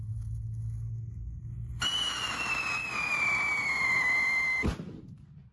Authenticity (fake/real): real